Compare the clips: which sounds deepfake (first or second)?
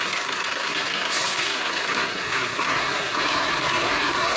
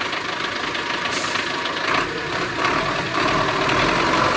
first